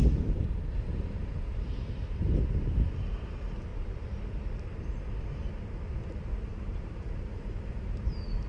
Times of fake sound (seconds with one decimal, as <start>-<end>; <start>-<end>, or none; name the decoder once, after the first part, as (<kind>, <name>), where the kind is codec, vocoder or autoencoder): 6.5-8.5 (vocoder, BigVGAN v2)